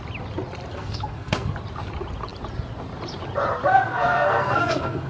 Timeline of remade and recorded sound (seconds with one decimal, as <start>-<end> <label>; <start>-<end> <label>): 0.0-0.7 recorded; 0.7-1.5 remade; 1.5-3.7 recorded; 3.7-5.1 remade